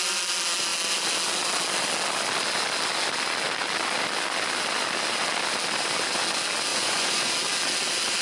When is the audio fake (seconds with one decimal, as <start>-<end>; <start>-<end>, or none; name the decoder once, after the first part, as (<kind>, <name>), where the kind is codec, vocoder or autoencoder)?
6.7-7.3 (vocoder, Vocos)